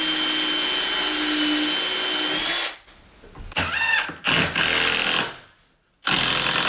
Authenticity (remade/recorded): recorded